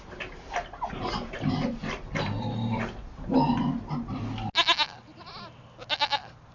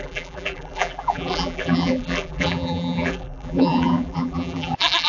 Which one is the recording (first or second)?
first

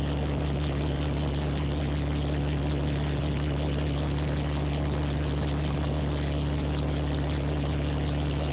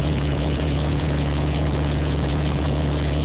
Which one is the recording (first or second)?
first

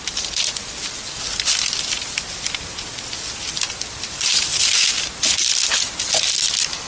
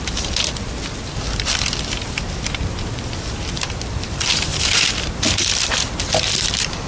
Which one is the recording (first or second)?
first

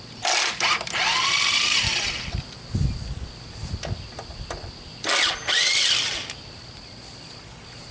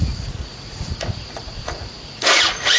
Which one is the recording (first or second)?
first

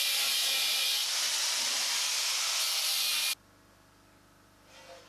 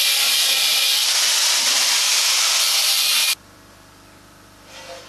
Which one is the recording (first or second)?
first